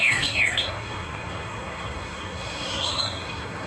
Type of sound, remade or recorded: remade